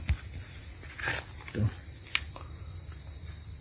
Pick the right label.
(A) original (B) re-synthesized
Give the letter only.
A